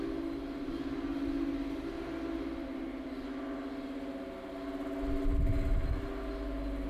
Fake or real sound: real